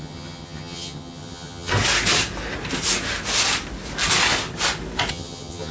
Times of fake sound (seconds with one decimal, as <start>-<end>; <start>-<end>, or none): 0.0-1.7; 5.1-5.7